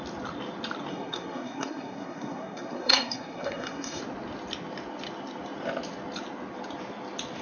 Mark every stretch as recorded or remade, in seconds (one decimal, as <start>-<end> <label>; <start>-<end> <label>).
0.0-0.9 recorded; 0.9-4.0 remade; 4.0-7.4 recorded